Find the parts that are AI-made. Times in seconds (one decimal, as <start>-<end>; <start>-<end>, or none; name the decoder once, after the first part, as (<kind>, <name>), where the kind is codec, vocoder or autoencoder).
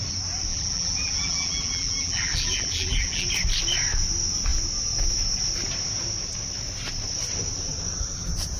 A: 0.5-3.3 (vocoder, BigVGAN v2)